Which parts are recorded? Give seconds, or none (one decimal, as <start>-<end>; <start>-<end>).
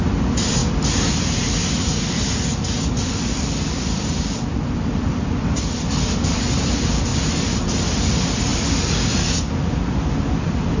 0.0-1.6; 5.9-10.8